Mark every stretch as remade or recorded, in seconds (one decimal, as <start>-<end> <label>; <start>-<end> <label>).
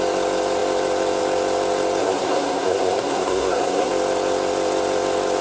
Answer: 0.0-2.0 recorded; 2.0-3.9 remade; 3.9-5.4 recorded